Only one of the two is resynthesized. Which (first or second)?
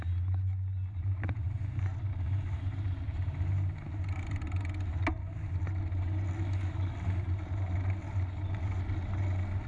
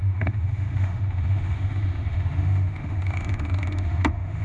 second